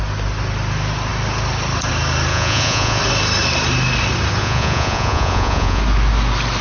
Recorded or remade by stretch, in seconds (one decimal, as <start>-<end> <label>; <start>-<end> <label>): 0.0-2.3 recorded; 2.3-3.0 remade; 3.0-4.4 recorded; 4.4-5.8 remade; 5.8-6.6 recorded